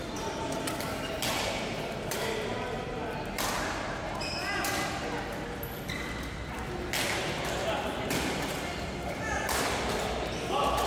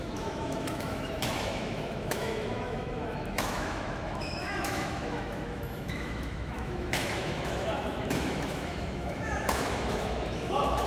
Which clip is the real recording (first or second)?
first